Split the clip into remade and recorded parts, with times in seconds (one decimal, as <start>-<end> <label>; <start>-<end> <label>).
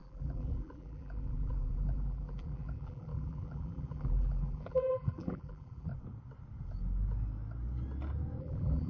0.0-5.9 remade; 5.9-8.4 recorded; 8.4-8.9 remade